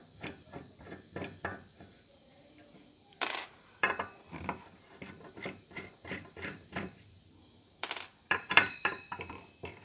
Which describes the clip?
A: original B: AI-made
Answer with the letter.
B